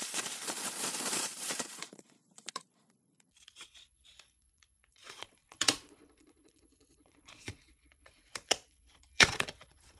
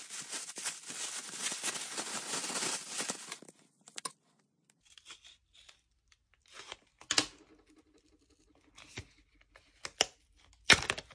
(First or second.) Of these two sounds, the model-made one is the first